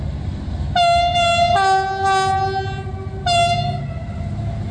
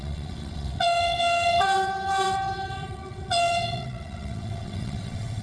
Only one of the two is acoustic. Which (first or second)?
first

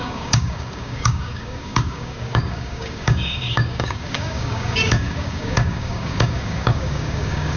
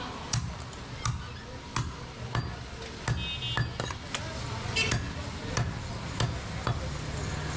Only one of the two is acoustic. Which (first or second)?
second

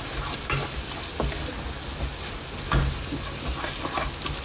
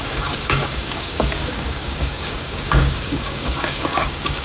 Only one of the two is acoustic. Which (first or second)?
first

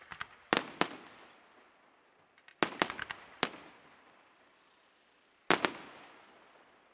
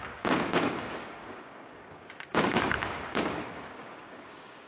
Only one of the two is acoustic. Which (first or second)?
first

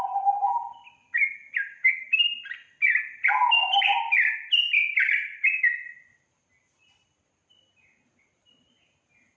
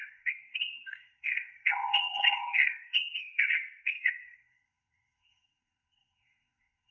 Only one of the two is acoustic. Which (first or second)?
first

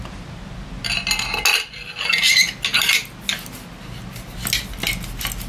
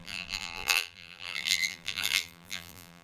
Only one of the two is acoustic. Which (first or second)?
first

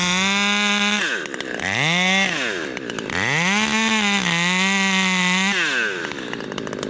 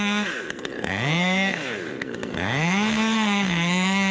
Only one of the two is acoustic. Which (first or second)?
first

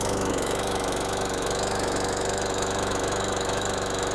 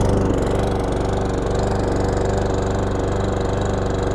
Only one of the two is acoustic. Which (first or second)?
second